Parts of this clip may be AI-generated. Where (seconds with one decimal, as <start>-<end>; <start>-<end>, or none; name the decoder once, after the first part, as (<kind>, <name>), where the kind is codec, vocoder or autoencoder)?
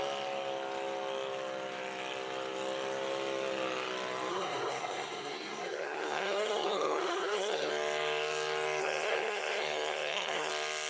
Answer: 4.3-7.7 (codec, SNAC); 8.8-10.5